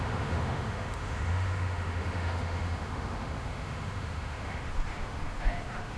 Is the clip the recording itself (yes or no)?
no